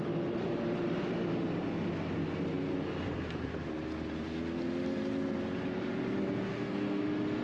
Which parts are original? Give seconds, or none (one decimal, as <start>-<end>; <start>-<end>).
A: 0.0-6.5; 7.0-7.4